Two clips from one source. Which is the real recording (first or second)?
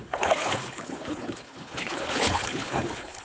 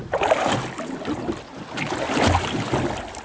second